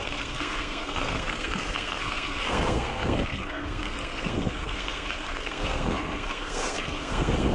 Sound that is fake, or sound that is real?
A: fake